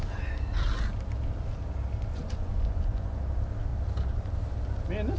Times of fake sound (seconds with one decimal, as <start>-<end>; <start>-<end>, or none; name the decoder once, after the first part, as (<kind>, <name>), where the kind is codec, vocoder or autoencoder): 2.1-3.2 (vocoder, Vocos)

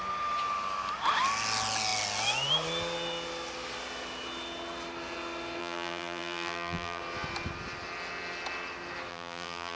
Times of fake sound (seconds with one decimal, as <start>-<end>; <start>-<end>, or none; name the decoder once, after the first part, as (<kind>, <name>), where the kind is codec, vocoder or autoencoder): 5.6-7.0 (vocoder, BigVGAN v2); 9.1-9.8

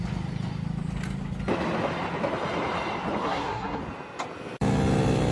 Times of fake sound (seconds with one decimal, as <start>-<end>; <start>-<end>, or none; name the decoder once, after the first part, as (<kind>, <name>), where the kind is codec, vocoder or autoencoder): 3.2-3.8 (codec, SNAC)

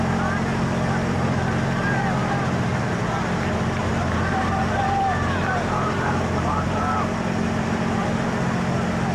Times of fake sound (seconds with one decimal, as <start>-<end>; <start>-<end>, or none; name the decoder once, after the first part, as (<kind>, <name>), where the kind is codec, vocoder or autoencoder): 3.8-6.8 (vocoder, BigVGAN v2)

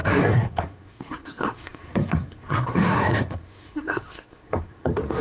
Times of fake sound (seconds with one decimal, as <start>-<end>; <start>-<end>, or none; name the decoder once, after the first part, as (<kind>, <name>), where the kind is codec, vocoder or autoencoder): 0.0-5.2 (codec, SNAC)

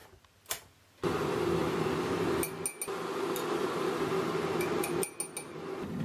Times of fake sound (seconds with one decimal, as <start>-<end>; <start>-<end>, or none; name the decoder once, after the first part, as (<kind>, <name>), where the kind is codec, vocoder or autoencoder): none

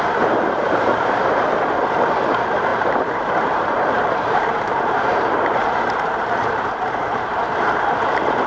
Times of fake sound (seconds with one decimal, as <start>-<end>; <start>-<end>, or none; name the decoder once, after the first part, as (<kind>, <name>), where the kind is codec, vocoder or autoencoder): 0.6-1.7 (vocoder, BigVGAN v2); 2.7-7.8